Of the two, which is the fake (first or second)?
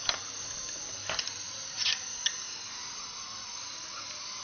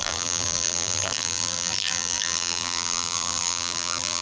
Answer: second